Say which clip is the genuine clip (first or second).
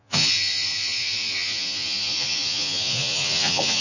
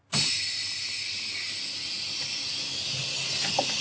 second